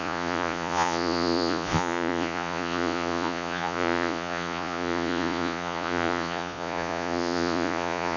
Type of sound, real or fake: fake